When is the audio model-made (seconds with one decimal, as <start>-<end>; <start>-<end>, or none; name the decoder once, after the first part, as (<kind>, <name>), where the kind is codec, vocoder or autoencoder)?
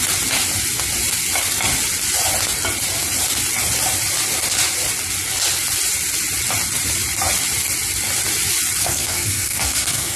8.8-10.2 (codec, SNAC)